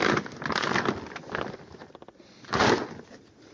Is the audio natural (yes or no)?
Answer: yes